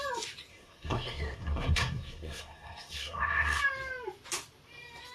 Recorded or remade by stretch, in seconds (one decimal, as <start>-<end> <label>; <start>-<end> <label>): 0.0-0.5 recorded; 0.5-3.6 remade; 3.6-5.1 recorded

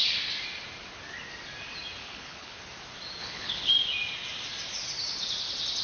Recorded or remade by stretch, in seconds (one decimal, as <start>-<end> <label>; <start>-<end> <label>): 0.0-2.0 recorded; 2.0-2.6 remade; 2.6-3.2 recorded; 3.2-3.7 remade; 3.7-5.8 recorded

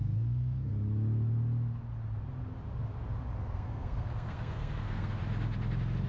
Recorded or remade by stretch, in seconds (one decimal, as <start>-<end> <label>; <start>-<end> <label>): 0.0-0.7 remade; 0.7-3.4 recorded; 3.4-5.2 remade; 5.2-6.1 recorded

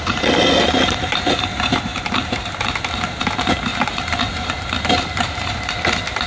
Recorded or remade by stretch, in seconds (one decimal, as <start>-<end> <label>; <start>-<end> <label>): 0.0-1.9 recorded; 1.9-2.5 remade; 2.5-3.7 recorded; 3.7-5.6 remade; 5.6-6.3 recorded

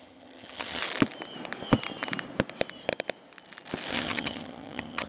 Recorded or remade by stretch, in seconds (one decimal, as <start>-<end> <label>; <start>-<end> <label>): 0.0-0.8 remade; 0.8-3.9 recorded; 3.9-5.1 remade

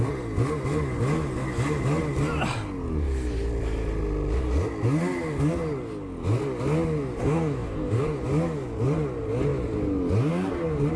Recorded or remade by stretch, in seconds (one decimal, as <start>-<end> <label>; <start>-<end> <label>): 0.0-7.2 recorded; 7.2-8.0 remade; 8.0-11.0 recorded

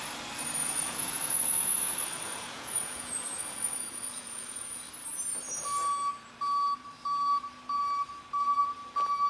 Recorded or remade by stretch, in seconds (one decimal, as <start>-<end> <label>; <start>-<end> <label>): 0.0-0.6 recorded; 0.6-4.9 remade; 4.9-9.3 recorded

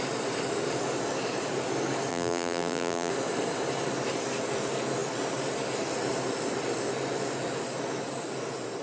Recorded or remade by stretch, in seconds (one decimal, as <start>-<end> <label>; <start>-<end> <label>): 0.0-2.1 recorded; 2.1-3.1 remade; 3.1-8.8 recorded